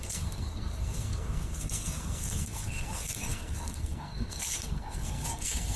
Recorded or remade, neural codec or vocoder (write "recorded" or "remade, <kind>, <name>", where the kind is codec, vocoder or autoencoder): remade, codec, SNAC